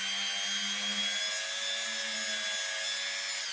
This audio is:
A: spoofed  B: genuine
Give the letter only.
B